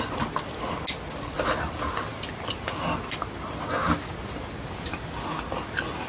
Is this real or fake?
real